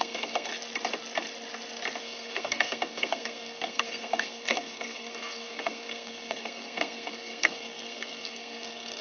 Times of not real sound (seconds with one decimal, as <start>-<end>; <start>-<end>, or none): 0.0-0.5; 2.0-9.0